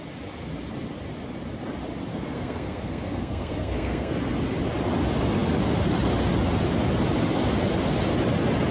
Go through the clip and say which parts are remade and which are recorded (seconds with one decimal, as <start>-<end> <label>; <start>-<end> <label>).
0.0-2.1 recorded; 2.1-4.1 remade; 4.1-8.7 recorded